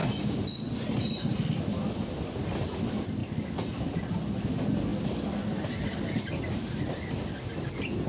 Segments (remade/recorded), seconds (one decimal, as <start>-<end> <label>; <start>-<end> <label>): 0.0-8.1 recorded

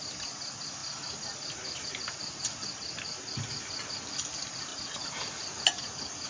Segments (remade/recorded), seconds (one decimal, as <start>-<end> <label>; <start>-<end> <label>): 0.0-6.3 recorded

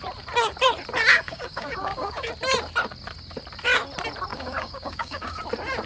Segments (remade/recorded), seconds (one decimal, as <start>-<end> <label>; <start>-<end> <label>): 0.0-1.1 recorded; 1.1-2.3 remade; 2.3-4.3 recorded; 4.3-5.4 remade; 5.4-5.9 recorded

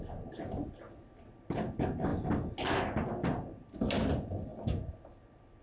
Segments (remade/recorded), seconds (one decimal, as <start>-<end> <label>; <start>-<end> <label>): 0.0-5.6 recorded

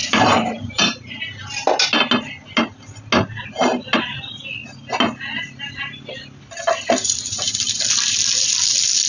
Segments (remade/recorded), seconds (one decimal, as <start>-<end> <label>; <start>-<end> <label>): 0.0-0.8 remade; 0.8-7.0 recorded; 7.0-8.2 remade; 8.2-9.1 recorded

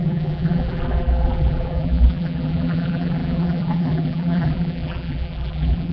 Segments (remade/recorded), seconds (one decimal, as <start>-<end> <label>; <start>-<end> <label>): 0.0-5.9 remade

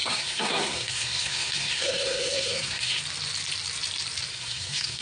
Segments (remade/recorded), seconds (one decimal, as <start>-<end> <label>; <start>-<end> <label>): 0.0-3.0 remade; 3.0-4.3 recorded; 4.3-5.0 remade